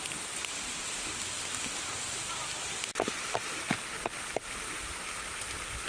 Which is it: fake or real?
real